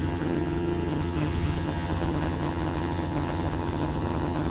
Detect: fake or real fake